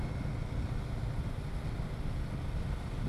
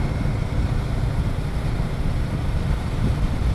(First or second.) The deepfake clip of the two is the second